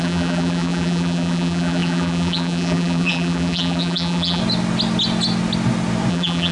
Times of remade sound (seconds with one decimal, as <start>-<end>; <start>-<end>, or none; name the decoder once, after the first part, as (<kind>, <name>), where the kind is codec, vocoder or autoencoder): 0.0-4.4 (vocoder, BigVGAN v2); 6.1-6.5